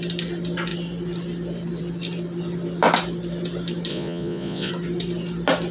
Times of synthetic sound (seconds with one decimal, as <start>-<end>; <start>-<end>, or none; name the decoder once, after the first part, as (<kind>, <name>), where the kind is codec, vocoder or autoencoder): 3.9-4.7 (vocoder, Vocos)